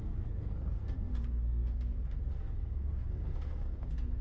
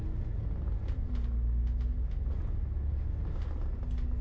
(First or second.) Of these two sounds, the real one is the second